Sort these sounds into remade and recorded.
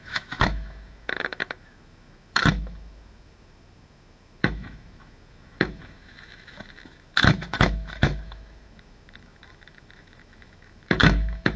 remade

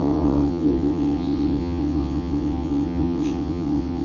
remade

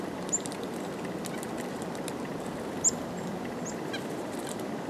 recorded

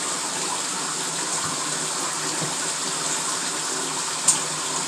recorded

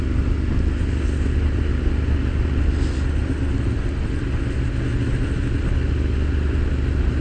recorded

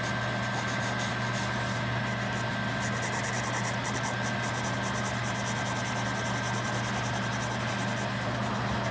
recorded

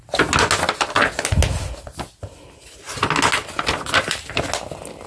recorded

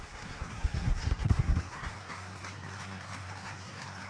remade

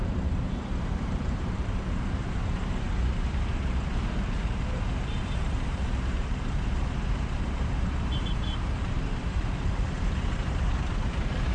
remade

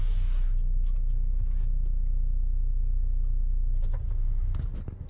recorded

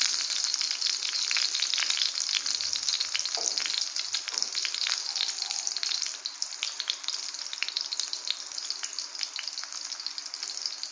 recorded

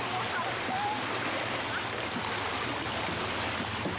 recorded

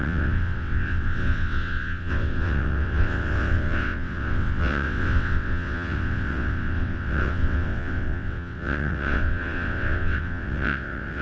remade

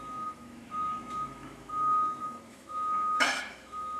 remade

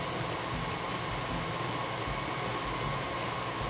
recorded